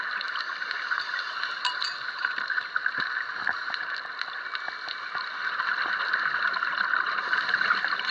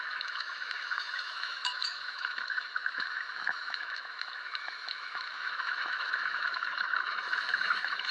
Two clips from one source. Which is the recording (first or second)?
first